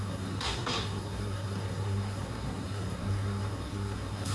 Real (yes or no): no